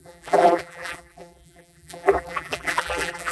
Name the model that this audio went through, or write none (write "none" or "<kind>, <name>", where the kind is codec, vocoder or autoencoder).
vocoder, BigVGAN v2